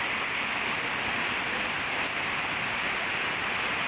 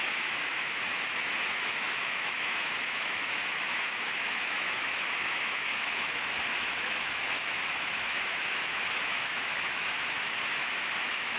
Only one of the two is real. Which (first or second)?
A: first